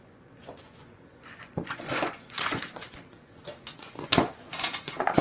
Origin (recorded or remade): remade